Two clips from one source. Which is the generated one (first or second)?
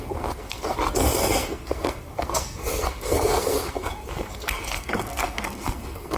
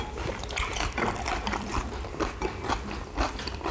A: first